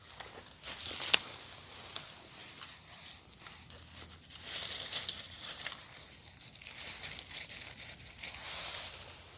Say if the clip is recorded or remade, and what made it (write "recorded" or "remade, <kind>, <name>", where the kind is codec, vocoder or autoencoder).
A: recorded